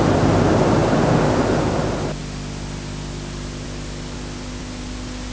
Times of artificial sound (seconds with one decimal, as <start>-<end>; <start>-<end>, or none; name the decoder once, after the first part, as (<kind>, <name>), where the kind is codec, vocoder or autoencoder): none